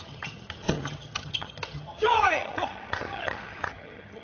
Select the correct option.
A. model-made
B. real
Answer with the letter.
A